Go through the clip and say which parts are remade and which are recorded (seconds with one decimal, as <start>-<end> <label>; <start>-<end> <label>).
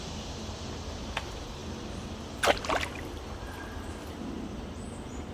0.0-5.3 recorded